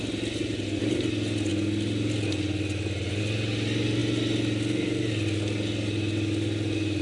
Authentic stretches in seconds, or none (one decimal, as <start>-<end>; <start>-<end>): 0.0-7.0